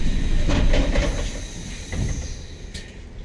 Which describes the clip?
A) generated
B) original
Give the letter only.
B